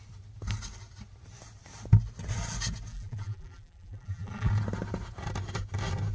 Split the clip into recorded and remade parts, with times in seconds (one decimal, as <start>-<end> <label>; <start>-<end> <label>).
0.0-2.9 recorded; 2.9-4.5 remade; 4.5-6.1 recorded